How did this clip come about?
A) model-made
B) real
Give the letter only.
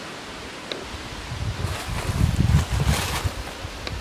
B